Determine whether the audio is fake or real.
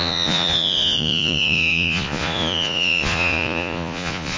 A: fake